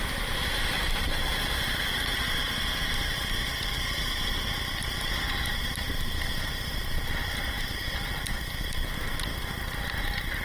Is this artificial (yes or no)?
no